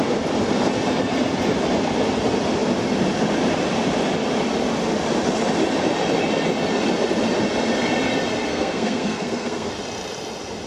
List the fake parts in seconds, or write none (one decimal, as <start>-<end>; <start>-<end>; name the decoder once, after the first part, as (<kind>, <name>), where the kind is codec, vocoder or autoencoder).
8.5-9.7 (codec, SNAC)